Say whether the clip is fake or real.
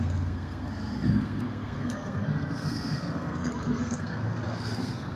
fake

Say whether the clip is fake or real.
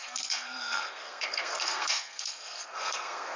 fake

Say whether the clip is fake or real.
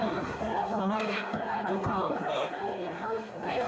fake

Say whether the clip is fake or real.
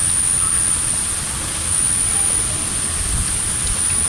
real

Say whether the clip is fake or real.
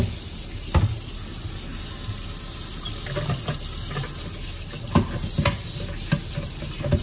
real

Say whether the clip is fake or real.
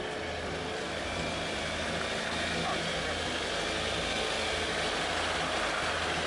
real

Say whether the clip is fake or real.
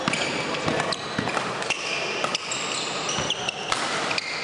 real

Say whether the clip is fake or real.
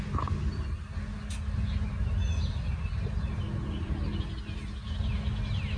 real